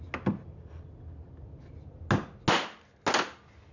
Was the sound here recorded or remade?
recorded